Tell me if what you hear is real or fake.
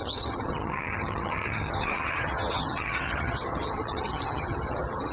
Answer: fake